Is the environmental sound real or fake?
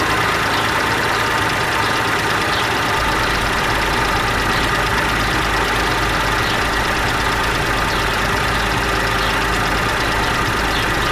real